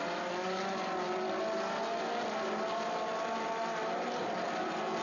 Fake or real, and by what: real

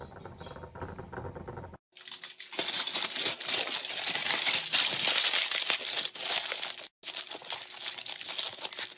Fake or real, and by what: real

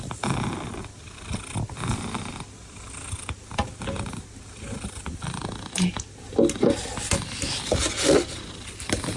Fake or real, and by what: real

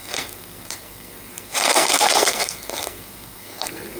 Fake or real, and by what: fake, codec, SNAC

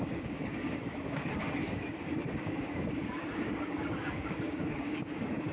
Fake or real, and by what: fake, codec, DAC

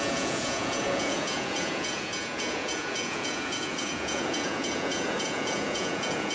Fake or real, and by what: fake, vocoder, Vocos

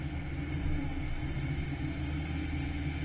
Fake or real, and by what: real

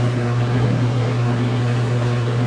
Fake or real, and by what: fake, codec, SNAC